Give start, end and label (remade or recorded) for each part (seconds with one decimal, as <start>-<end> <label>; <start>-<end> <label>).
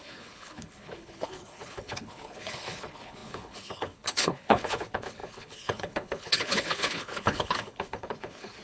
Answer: 0.0-8.6 remade